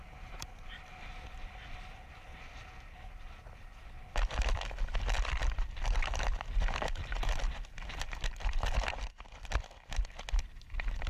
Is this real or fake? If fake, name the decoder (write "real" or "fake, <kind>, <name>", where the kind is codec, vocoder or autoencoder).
real